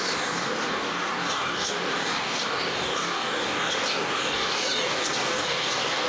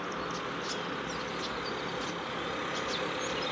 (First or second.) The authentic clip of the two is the second